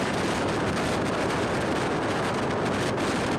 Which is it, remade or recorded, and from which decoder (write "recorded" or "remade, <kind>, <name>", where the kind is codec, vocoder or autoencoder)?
recorded